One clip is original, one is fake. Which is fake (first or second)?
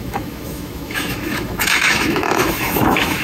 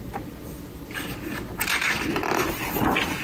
first